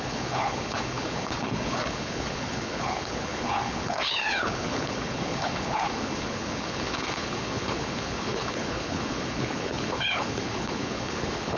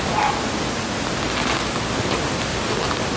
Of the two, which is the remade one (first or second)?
first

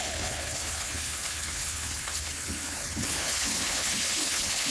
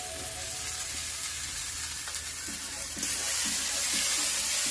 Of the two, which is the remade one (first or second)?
first